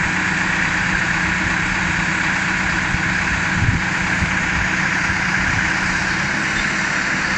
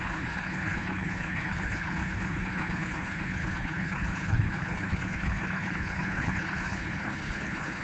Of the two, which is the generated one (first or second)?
second